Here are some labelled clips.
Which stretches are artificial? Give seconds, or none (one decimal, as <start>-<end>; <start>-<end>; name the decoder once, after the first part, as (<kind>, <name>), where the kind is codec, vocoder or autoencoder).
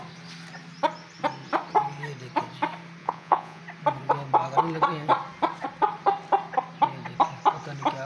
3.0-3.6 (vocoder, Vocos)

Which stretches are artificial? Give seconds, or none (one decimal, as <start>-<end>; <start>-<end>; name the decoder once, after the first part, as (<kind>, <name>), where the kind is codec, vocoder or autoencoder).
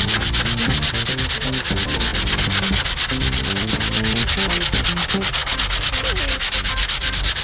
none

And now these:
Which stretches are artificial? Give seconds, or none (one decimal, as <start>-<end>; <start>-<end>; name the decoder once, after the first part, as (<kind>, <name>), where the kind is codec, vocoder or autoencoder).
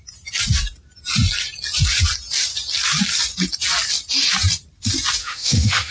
5.2-5.9 (autoencoder, DAC-VAE)